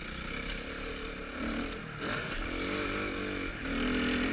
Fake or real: real